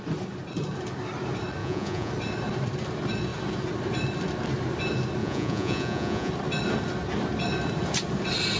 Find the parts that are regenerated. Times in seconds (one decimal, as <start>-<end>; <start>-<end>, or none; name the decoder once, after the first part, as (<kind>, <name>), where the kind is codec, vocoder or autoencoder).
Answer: 1.6-2.1 (vocoder, Vocos); 5.2-6.3